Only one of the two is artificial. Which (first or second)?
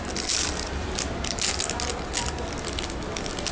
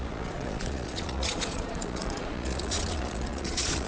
second